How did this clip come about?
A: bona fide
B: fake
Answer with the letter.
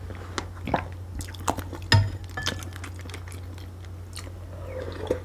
A